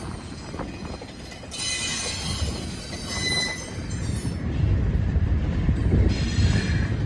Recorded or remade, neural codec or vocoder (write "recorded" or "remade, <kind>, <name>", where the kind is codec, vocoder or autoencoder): recorded